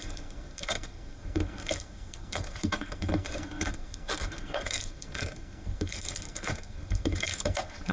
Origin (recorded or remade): remade